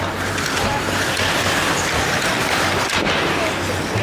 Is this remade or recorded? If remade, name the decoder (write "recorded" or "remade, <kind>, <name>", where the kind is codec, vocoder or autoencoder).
recorded